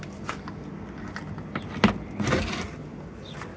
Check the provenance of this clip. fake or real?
real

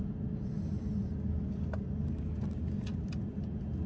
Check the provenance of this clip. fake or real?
real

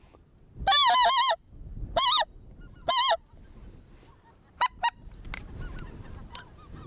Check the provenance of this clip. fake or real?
real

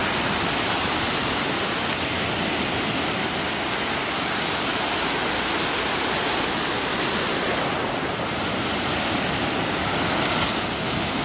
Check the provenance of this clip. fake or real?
real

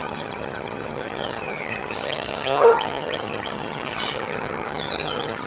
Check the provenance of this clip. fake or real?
fake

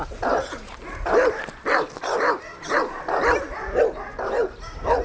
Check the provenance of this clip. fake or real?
real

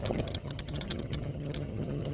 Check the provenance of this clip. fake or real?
fake